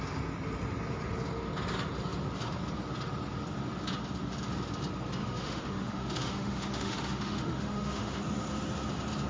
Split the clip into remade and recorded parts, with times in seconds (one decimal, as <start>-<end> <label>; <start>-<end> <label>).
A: 0.0-5.2 recorded; 5.2-8.2 remade; 8.2-9.3 recorded